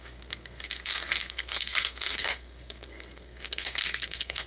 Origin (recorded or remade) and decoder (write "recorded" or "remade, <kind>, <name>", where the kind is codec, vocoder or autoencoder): remade, codec, SNAC